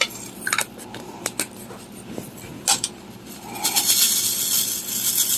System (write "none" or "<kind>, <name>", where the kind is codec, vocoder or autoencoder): none